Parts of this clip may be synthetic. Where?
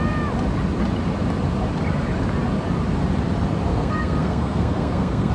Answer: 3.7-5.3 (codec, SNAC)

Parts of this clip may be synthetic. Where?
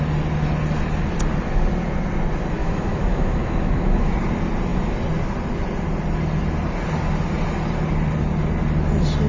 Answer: 2.6-4.1 (autoencoder, DAC-VAE)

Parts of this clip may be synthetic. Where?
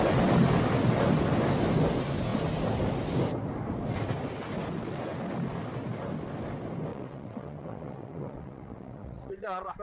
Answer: 6.9-9.8 (vocoder, WaveNeXt)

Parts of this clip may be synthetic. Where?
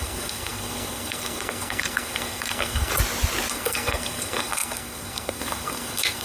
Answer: 0.0-2.9 (codec, SNAC); 3.5-6.2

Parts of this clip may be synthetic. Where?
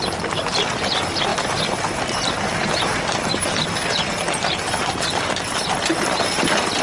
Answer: 1.3-1.9 (vocoder, BigVGAN v2); 4.8-5.5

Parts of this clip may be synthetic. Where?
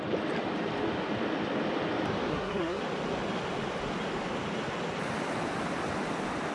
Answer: 2.3-2.8 (codec, SNAC)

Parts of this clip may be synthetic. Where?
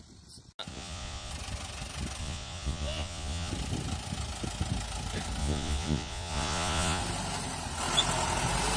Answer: 0.7-1.3 (vocoder, Vocos); 2.2-3.5; 5.4-7.0